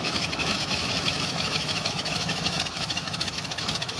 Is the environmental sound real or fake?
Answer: fake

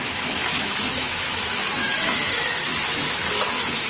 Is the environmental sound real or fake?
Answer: fake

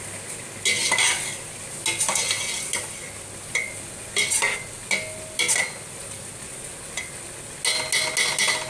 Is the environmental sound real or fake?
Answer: real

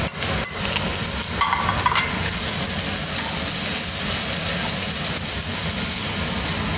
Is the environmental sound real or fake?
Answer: real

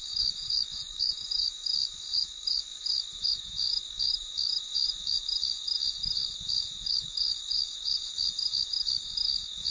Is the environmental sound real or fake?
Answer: fake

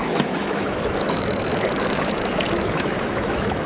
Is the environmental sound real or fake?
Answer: fake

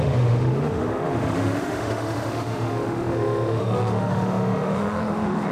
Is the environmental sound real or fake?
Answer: fake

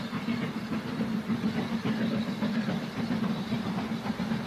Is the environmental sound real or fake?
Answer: real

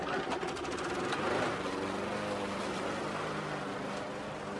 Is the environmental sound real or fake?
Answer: real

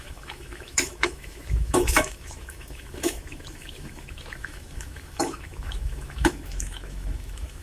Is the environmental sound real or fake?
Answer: fake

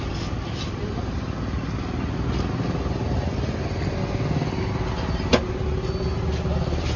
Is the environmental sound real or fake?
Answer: real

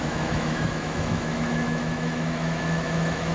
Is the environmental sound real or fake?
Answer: fake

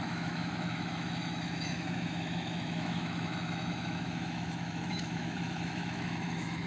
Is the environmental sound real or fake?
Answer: fake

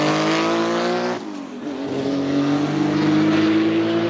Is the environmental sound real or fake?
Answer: real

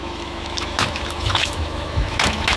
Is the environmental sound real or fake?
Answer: fake